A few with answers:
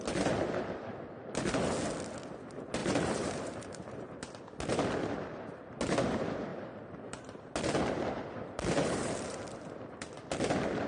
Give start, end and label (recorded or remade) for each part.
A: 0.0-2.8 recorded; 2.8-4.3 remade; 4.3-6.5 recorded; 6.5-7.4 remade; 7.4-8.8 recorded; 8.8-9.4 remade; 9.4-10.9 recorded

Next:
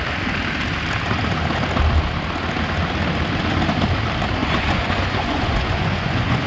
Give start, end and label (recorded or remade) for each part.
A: 0.0-4.4 recorded; 4.4-6.5 remade

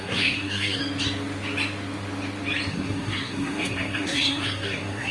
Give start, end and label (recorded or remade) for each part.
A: 0.0-0.8 remade; 0.8-2.7 recorded; 2.7-5.1 remade

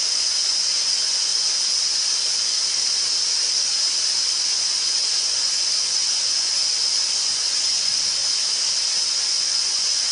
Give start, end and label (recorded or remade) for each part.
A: 0.0-1.3 remade; 1.3-4.4 recorded; 4.4-6.6 remade; 6.6-7.2 recorded; 7.2-8.2 remade; 8.2-9.0 recorded; 9.0-10.1 remade

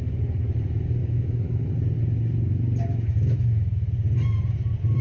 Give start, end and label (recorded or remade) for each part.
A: 0.0-1.0 recorded; 1.0-1.7 remade; 1.7-2.9 recorded; 2.9-3.9 remade; 3.9-5.0 recorded

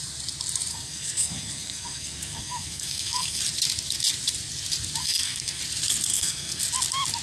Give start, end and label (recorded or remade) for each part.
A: 0.0-0.7 recorded; 0.7-3.4 remade; 3.4-5.0 recorded; 5.0-5.6 remade; 5.6-6.1 recorded; 6.1-6.6 remade; 6.6-7.2 recorded

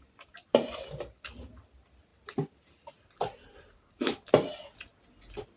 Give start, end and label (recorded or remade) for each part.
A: 0.0-5.6 recorded